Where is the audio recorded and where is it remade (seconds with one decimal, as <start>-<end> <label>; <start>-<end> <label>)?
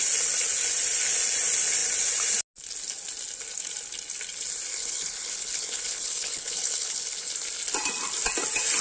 0.0-4.7 recorded; 4.7-7.3 remade; 7.3-8.8 recorded